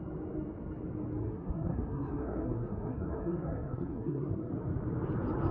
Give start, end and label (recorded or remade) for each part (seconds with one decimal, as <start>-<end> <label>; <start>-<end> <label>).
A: 0.0-1.2 recorded; 1.2-4.5 remade; 4.5-5.5 recorded